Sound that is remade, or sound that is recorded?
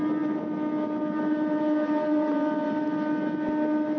recorded